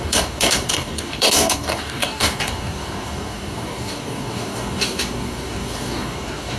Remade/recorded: remade